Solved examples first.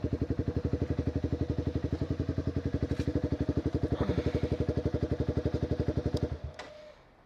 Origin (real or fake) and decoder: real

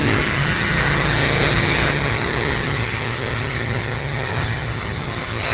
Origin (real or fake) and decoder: fake, vocoder, HiFi-GAN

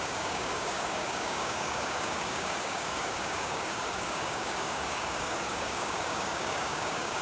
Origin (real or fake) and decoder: fake, codec, DAC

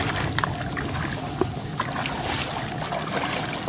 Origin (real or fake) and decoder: real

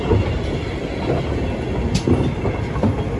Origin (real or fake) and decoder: real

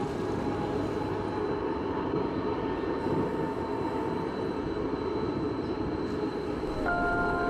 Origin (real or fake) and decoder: real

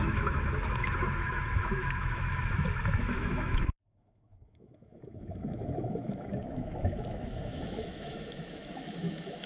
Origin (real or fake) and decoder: fake, autoencoder, DAC-VAE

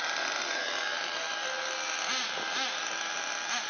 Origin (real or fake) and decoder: real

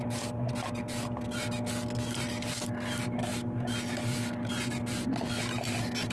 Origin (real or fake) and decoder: real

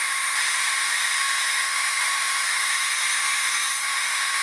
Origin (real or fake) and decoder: fake, autoencoder, DAC-VAE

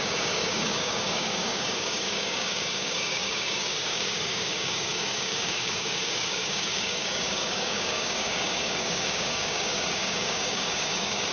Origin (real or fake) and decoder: fake, codec, DAC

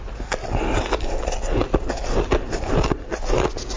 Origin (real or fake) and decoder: real